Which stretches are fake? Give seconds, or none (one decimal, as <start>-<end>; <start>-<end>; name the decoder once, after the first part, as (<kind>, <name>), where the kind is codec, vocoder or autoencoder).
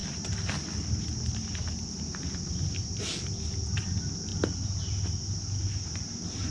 none